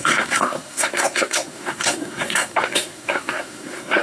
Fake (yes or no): yes